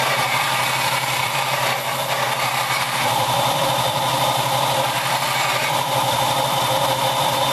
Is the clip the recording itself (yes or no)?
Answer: no